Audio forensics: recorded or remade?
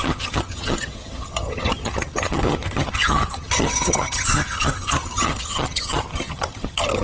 remade